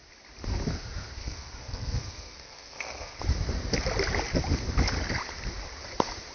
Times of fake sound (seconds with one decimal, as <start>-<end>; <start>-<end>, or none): 1.2-3.2